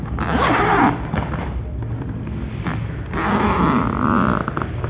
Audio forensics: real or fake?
real